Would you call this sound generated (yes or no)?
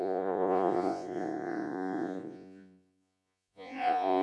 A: yes